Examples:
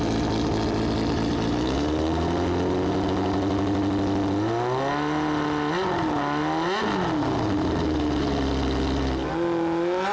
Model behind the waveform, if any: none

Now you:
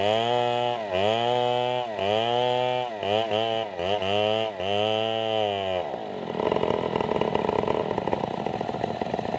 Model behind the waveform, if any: none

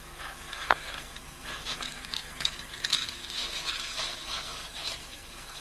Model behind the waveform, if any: codec, SNAC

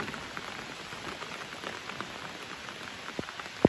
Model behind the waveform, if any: none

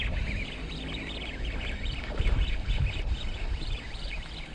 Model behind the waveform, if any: none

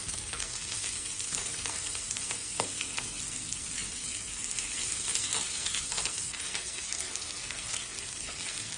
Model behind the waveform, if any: codec, SNAC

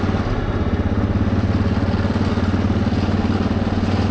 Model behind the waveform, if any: none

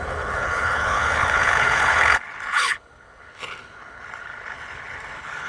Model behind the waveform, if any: codec, HILCodec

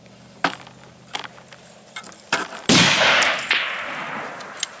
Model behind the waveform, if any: none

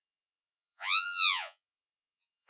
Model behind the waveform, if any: vocoder, Vocos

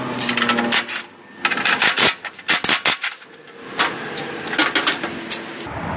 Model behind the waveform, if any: none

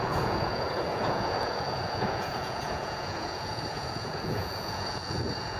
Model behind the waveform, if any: vocoder, Vocos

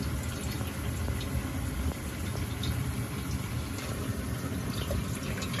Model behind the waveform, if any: none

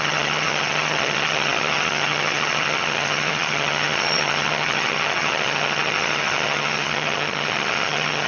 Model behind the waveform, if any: vocoder, HiFi-GAN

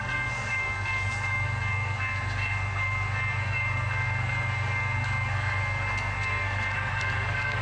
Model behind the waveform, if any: codec, SNAC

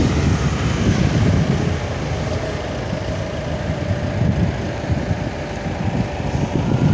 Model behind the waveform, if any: none